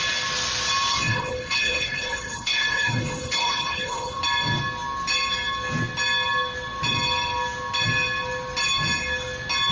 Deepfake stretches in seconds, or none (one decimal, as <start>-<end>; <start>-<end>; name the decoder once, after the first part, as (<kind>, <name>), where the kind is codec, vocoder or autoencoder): 0.9-4.2 (codec, HILCodec)